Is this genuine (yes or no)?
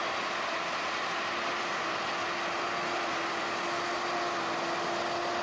yes